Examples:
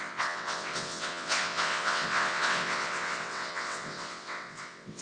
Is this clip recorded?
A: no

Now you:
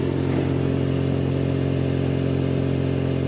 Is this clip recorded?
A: yes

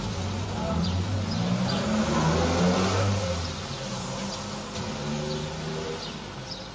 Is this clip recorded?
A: yes